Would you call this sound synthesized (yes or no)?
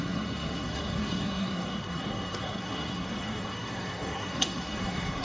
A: yes